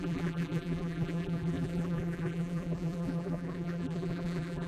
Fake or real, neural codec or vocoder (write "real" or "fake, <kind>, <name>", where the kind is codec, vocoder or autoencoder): fake, vocoder, BigVGAN v2